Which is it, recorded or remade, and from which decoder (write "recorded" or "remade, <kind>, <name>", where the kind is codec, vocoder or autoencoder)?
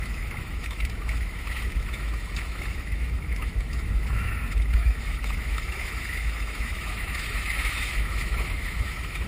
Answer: remade, autoencoder, DAC-VAE